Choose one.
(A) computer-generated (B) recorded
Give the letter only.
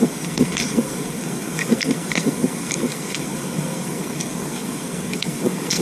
A